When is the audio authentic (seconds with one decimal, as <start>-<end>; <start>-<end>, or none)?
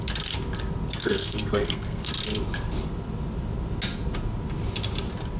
0.0-1.0; 2.1-5.4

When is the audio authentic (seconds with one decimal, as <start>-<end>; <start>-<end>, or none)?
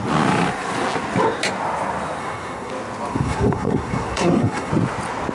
0.0-2.2; 2.7-3.1; 4.7-5.3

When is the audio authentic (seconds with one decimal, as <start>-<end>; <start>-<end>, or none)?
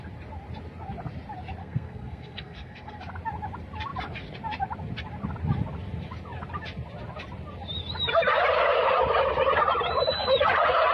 0.0-1.6; 3.0-10.9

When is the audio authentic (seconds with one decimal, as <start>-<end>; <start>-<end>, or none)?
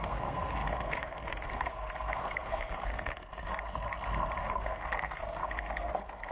3.5-4.4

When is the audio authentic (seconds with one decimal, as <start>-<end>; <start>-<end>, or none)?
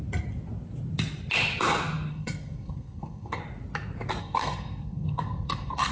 0.0-2.1; 3.4-4.2